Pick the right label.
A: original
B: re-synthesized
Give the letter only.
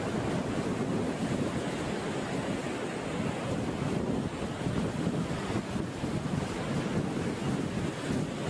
A